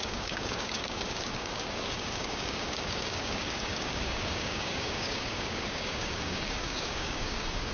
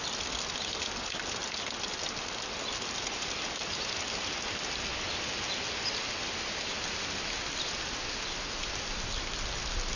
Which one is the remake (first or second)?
first